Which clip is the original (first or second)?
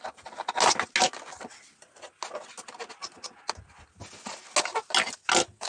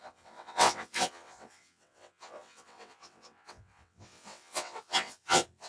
first